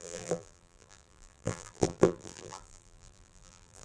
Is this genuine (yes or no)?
no